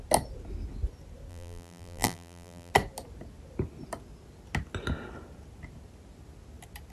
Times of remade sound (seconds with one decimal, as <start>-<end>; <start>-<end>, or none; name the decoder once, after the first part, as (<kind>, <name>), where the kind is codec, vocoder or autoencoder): 1.3-2.7 (vocoder, BigVGAN v2)